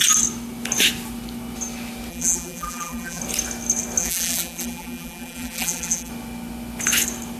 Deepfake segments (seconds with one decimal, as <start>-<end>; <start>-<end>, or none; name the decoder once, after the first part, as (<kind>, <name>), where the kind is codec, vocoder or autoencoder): 2.1-3.2 (vocoder, BigVGAN v2); 4.0-6.1